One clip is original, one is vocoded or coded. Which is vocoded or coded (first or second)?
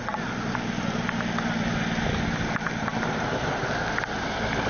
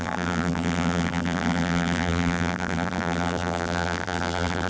second